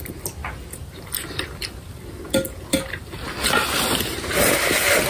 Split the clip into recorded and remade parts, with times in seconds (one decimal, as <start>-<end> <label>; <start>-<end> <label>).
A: 0.0-5.1 recorded